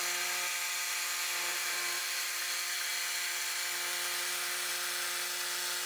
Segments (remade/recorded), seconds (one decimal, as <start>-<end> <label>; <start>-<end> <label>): 0.0-1.5 recorded; 1.5-2.4 remade; 2.4-5.9 recorded